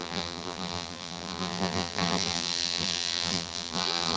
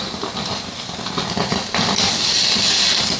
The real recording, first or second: second